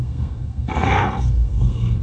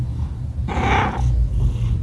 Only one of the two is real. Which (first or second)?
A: second